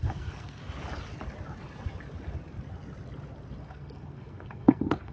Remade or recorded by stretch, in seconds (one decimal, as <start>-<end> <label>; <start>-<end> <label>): 0.0-0.6 remade; 0.6-3.7 recorded; 3.7-5.1 remade